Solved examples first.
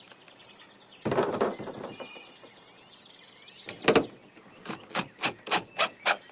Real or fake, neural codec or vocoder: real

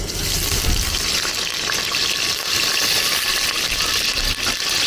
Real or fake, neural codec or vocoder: real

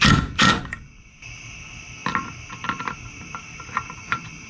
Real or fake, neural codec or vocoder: real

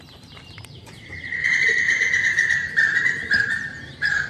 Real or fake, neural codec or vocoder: fake, vocoder, BigVGAN v2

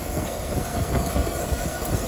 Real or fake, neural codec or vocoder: fake, codec, SNAC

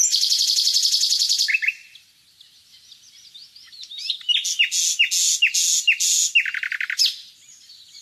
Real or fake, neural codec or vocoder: real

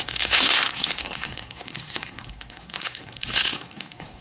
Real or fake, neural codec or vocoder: fake, codec, SNAC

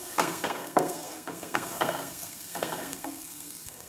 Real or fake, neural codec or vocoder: fake, codec, SNAC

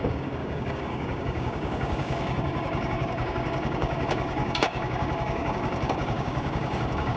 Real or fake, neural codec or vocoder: fake, codec, DAC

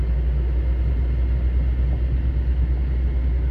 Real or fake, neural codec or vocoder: real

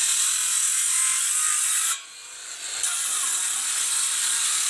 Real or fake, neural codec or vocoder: real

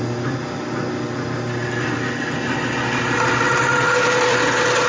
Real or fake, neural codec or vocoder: real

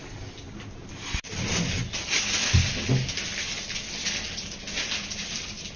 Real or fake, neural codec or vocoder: real